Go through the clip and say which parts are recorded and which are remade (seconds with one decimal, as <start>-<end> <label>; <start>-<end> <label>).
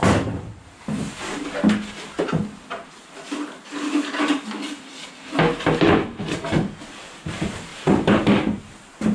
0.0-7.7 recorded; 7.7-8.6 remade; 8.6-9.1 recorded